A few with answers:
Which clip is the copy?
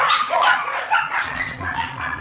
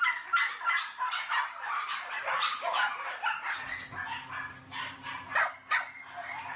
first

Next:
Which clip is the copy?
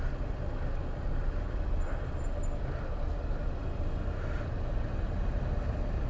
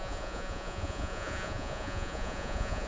second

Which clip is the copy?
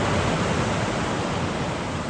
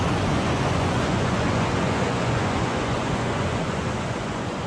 second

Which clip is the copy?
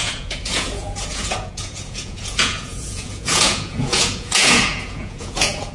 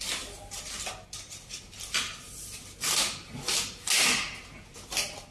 first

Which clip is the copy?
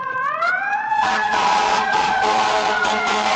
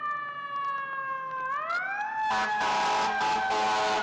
first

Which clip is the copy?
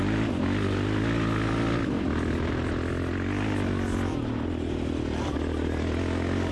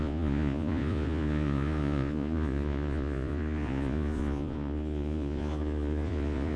second